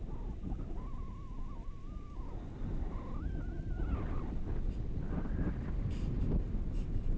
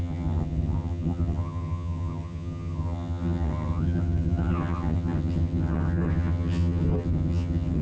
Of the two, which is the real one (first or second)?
first